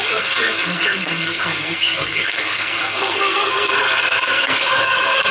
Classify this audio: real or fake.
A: fake